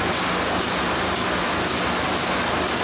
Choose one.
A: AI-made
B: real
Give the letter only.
B